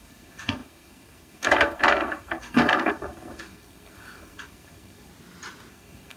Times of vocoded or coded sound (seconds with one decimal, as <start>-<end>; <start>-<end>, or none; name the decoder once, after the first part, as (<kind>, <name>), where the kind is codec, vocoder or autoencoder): 0.0-5.1 (codec, SNAC); 5.7-6.2